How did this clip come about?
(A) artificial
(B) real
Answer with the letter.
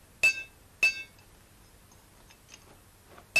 B